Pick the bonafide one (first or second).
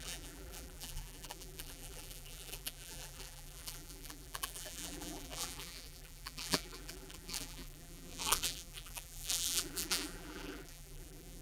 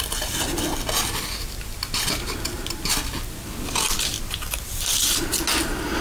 second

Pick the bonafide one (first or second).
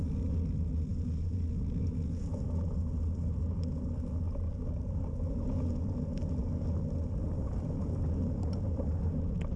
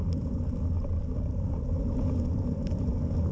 first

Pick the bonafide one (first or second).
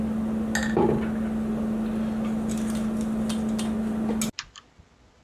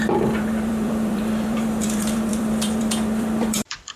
first